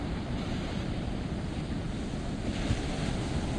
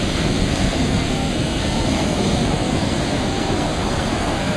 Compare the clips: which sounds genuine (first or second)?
first